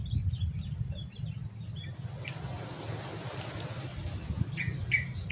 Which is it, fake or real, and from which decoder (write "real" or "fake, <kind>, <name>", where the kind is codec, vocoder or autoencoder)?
real